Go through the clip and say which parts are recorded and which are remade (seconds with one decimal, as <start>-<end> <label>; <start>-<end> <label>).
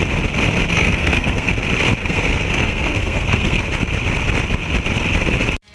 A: 0.0-0.7 recorded; 0.7-1.5 remade; 1.5-2.0 recorded; 2.0-3.6 remade; 3.6-5.7 recorded